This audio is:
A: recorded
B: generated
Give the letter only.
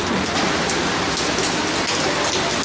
A